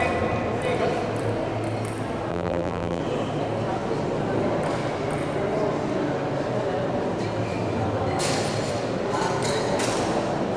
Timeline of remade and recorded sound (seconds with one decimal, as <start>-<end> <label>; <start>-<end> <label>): 0.0-2.3 recorded; 2.3-3.0 remade; 3.0-10.6 recorded